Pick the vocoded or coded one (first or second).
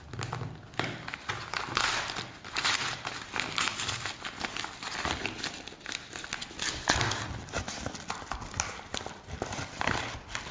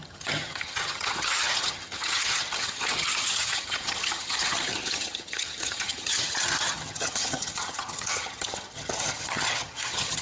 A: second